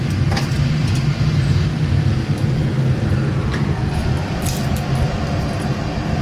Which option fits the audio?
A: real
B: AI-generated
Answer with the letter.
A